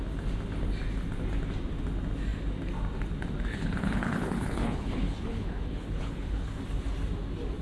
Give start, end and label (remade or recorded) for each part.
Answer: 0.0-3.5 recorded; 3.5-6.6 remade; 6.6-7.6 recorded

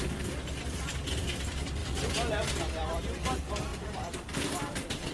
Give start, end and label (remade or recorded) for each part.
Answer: 0.0-1.8 recorded; 1.8-3.0 remade; 3.0-3.7 recorded; 3.7-5.1 remade

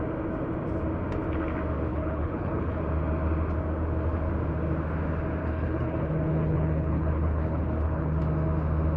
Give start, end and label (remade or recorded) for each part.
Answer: 0.0-1.9 recorded; 1.9-2.8 remade; 2.8-5.4 recorded; 5.4-8.2 remade; 8.2-9.0 recorded

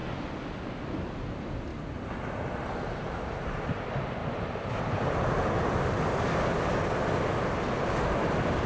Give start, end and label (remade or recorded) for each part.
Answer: 0.0-8.7 recorded

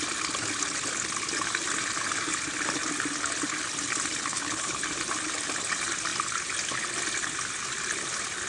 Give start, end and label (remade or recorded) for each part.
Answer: 0.0-4.3 recorded; 4.3-4.8 remade; 4.8-8.5 recorded

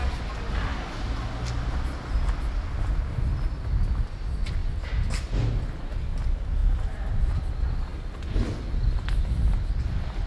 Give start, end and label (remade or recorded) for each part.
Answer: 0.0-10.3 recorded